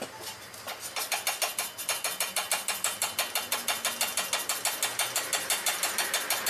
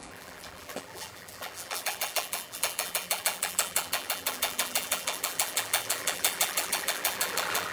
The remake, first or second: second